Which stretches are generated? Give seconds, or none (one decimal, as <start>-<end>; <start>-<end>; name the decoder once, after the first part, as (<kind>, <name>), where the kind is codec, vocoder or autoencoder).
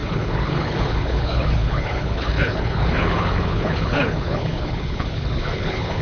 0.0-6.0 (codec, HILCodec)